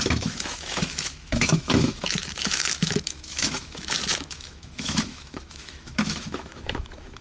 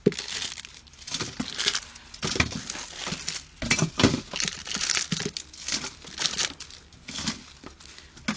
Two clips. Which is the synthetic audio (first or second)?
first